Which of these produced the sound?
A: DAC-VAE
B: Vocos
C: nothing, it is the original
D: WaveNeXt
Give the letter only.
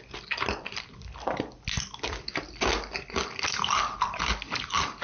C